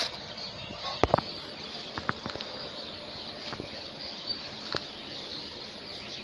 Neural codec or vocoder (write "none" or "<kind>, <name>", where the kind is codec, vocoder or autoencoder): vocoder, BigVGAN v2